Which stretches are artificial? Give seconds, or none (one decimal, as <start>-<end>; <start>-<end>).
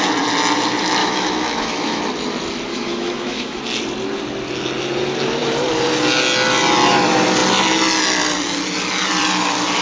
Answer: 1.0-2.0; 2.7-3.6